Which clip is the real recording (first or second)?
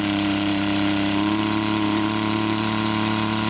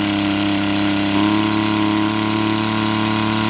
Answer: second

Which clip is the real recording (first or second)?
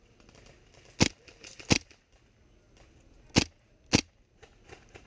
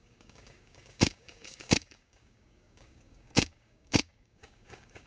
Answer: first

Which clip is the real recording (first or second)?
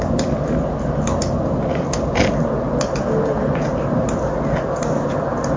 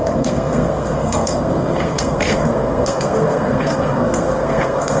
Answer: first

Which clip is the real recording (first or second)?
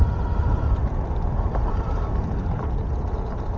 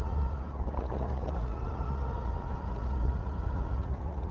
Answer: first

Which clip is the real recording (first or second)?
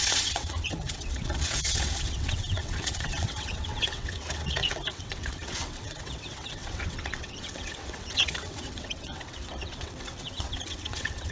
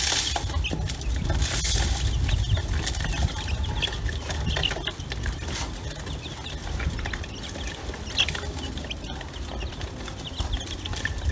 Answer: second